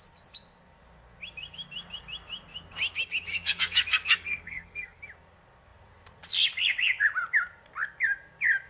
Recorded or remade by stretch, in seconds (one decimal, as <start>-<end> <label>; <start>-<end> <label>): 0.0-3.3 recorded; 3.3-5.0 remade; 5.0-8.7 recorded